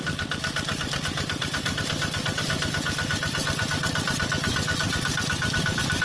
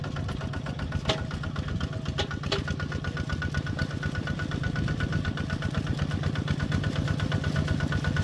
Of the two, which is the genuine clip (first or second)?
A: second